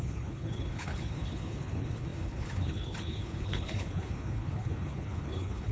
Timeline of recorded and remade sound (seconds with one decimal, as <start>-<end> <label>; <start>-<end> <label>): 0.0-5.7 remade